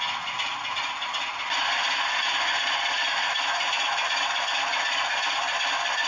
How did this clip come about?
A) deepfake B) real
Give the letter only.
B